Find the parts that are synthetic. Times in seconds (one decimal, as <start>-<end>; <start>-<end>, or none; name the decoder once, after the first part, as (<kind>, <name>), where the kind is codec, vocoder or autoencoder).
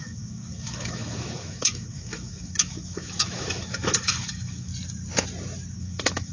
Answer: 0.0-4.7 (autoencoder, DAC-VAE); 5.7-6.3